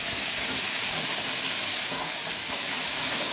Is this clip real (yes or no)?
no